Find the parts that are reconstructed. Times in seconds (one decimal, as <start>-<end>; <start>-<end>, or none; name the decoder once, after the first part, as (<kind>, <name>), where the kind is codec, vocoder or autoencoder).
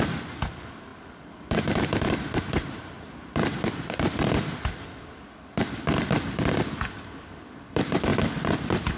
0.0-9.0 (vocoder, BigVGAN v2)